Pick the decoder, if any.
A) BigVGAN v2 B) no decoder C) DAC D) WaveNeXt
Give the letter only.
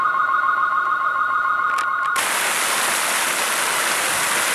B